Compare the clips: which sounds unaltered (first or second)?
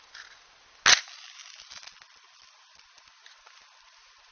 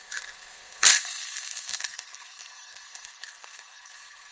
first